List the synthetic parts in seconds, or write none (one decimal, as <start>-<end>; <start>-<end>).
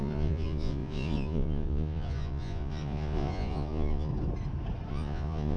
0.0-4.1; 4.9-5.6